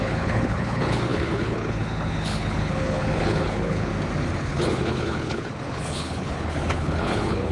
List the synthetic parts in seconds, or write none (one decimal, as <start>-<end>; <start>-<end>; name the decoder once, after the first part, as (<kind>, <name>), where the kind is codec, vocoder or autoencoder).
0.0-3.9 (codec, HILCodec); 4.4-7.5